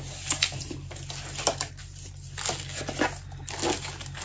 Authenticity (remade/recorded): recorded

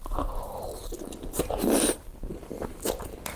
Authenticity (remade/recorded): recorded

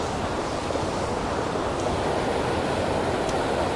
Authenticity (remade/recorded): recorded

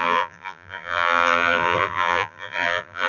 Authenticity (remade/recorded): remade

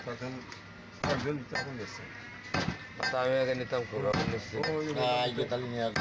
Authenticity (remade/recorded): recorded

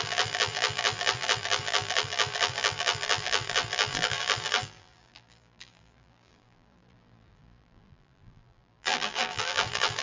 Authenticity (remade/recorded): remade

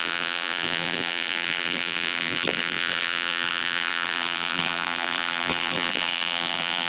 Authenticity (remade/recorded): remade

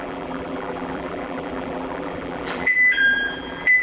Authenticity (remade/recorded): remade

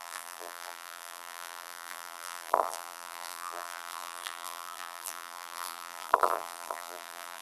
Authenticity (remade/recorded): remade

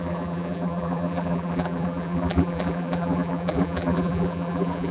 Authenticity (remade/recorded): remade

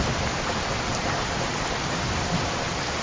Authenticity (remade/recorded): remade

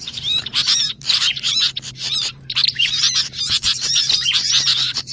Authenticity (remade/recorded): remade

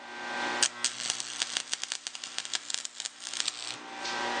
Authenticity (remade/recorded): recorded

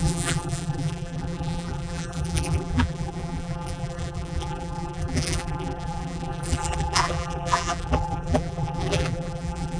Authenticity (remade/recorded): remade